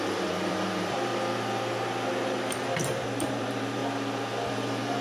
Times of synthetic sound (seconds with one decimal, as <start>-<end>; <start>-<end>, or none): 0.0-1.1; 2.1-3.8; 4.5-5.0